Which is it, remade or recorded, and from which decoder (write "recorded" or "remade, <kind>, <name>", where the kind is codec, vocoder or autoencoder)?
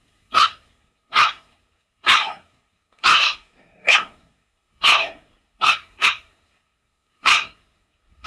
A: remade, codec, SNAC